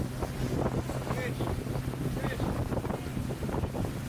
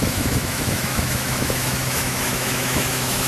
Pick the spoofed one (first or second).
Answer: second